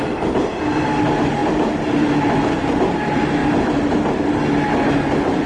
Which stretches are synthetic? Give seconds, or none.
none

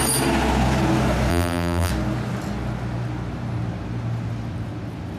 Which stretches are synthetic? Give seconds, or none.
1.3-1.9